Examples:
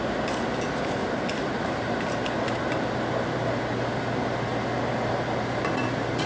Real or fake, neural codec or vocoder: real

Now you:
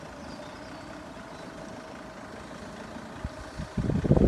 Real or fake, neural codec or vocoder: real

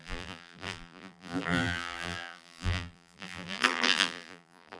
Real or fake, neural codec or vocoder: fake, vocoder, BigVGAN v2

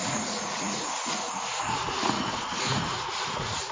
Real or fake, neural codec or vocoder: fake, vocoder, Vocos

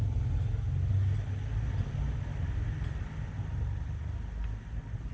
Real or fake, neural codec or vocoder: real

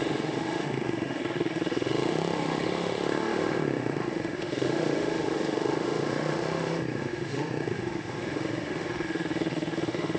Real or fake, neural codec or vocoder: fake, autoencoder, DAC-VAE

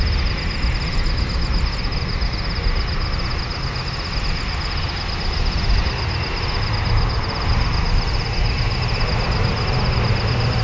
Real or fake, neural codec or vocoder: real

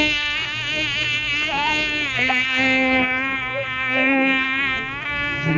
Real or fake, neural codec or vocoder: fake, codec, SNAC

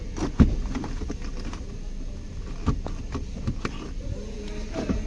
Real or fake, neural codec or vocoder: real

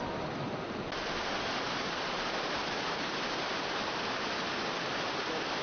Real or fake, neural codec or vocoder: real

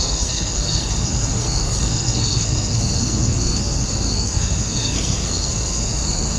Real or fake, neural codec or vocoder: fake, codec, SNAC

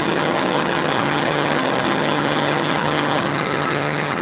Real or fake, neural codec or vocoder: fake, vocoder, HiFi-GAN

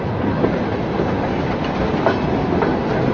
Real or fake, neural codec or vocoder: real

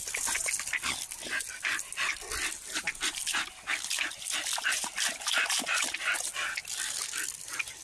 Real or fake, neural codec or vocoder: real